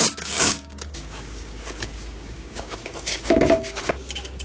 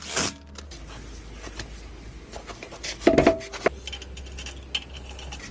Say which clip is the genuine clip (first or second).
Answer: second